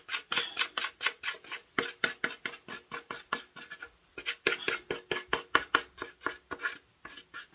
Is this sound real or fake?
real